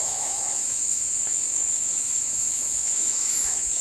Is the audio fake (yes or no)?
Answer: yes